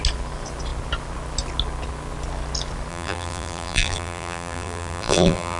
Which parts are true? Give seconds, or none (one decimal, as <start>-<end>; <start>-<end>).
0.0-2.9

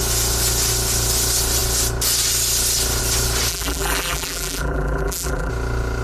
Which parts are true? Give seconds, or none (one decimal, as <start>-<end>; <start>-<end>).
0.0-3.5; 5.5-6.0

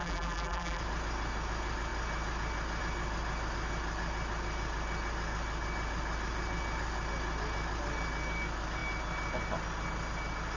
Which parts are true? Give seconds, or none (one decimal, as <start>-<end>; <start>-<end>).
0.8-10.6

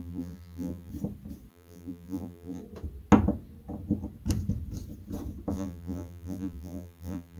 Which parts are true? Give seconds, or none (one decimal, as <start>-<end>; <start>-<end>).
0.9-1.5; 2.6-5.5

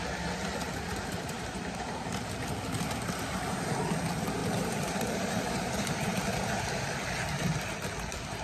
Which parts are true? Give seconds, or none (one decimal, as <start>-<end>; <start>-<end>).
0.0-0.9; 2.0-4.4; 6.2-8.4